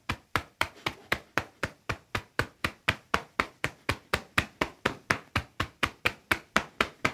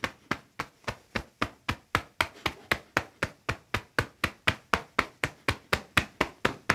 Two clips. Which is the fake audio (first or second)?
first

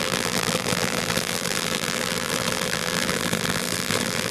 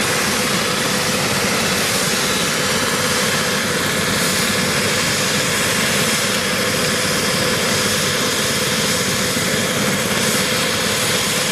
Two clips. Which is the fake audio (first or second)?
first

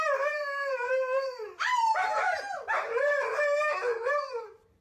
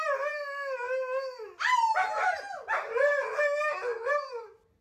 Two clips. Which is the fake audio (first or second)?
first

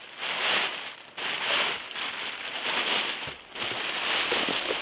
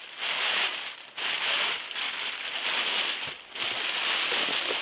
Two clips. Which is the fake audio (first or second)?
second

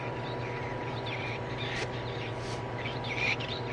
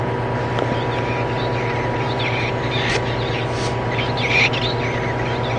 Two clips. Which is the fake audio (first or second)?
first